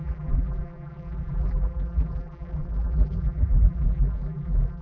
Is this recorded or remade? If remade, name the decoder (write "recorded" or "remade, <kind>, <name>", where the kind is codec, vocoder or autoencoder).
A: remade, vocoder, BigVGAN v2